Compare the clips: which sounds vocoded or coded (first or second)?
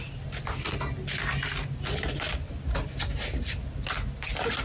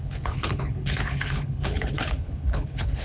second